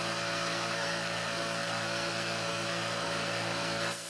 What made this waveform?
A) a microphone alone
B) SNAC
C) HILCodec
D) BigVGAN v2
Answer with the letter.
B